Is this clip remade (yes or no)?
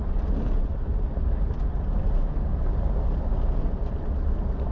no